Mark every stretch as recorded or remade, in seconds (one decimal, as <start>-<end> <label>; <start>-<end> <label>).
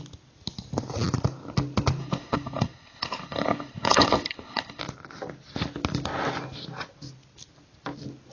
0.0-2.0 recorded; 2.0-4.8 remade; 4.8-8.3 recorded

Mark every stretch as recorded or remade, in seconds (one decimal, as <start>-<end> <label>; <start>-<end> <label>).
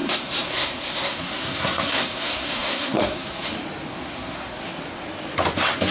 0.0-3.5 remade; 3.5-3.9 recorded; 3.9-4.7 remade; 4.7-5.9 recorded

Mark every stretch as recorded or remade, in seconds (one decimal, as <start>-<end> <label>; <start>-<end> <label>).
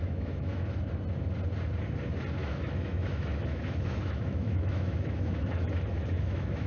0.0-0.6 remade; 0.6-2.4 recorded; 2.4-6.7 remade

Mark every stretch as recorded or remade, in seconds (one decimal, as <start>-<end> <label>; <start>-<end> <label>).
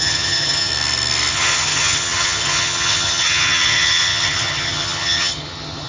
0.0-0.7 remade; 0.7-1.3 recorded; 1.3-5.9 remade